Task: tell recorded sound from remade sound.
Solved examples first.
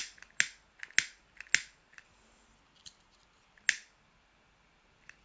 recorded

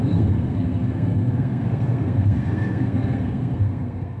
remade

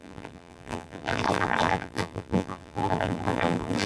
remade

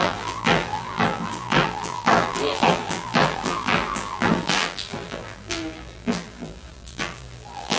remade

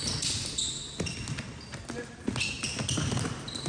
recorded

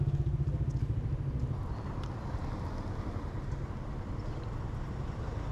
recorded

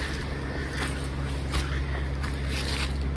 recorded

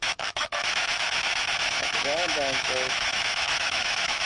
remade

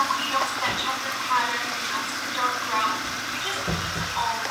remade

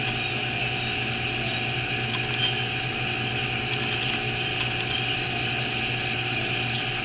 recorded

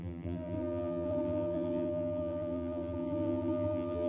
remade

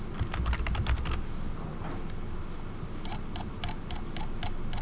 recorded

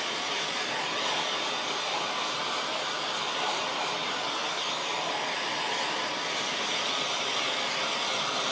recorded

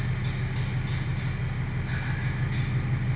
recorded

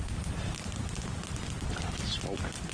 recorded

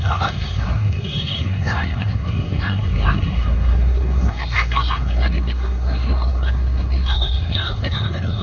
remade